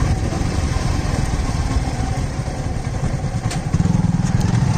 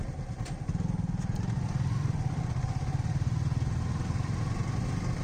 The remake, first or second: first